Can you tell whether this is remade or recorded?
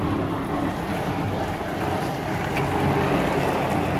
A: recorded